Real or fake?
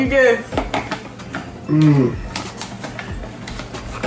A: real